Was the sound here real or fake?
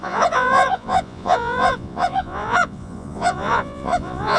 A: fake